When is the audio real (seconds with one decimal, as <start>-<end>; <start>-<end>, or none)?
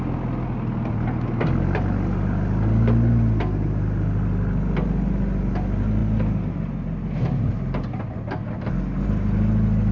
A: 0.0-9.9